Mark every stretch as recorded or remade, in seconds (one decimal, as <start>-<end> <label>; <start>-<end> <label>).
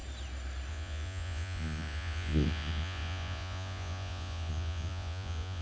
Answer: 0.0-0.7 recorded; 0.7-5.6 remade